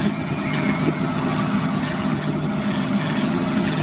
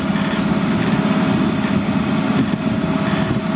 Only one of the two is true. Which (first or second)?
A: second